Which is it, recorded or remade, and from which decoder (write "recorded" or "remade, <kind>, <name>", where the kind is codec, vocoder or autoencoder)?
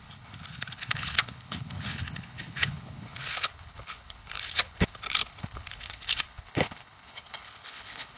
remade, codec, HILCodec